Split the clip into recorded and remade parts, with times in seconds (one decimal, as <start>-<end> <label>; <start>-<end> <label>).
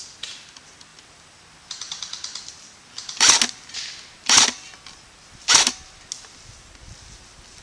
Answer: 0.0-7.6 recorded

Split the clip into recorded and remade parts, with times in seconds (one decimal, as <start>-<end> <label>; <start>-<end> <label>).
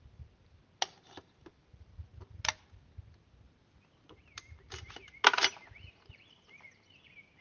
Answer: 0.0-0.6 remade; 0.6-1.5 recorded; 1.5-2.1 remade; 2.1-6.3 recorded; 6.3-7.4 remade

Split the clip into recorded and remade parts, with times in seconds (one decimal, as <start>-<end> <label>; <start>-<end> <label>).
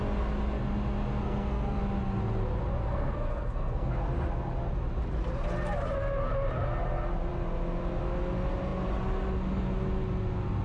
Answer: 0.0-1.2 recorded; 1.2-1.8 remade; 1.8-2.8 recorded; 2.8-3.9 remade; 3.9-10.6 recorded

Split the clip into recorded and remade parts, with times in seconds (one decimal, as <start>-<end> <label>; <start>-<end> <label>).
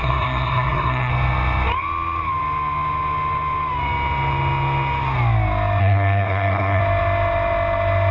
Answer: 0.0-1.1 remade; 1.1-5.8 recorded; 5.8-6.8 remade; 6.8-8.1 recorded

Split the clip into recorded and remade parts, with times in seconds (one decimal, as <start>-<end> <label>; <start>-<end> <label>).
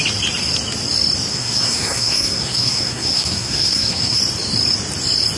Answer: 0.0-1.3 recorded; 1.3-4.2 remade; 4.2-5.4 recorded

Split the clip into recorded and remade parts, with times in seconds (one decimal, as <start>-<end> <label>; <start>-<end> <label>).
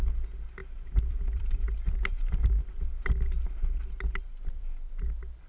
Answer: 0.0-0.6 recorded; 0.6-2.8 remade; 2.8-5.5 recorded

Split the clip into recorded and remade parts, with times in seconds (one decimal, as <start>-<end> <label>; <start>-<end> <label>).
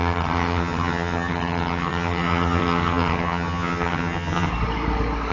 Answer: 0.0-4.5 remade; 4.5-5.3 recorded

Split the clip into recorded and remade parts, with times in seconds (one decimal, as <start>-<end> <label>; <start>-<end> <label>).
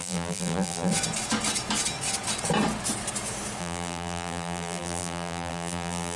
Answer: 0.0-0.9 remade; 0.9-3.6 recorded; 3.6-6.2 remade